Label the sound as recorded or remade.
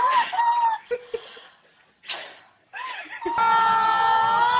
recorded